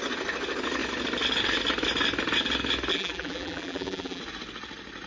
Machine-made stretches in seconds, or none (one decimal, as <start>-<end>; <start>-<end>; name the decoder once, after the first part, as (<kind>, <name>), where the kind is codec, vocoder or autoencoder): 2.9-4.2 (vocoder, BigVGAN v2)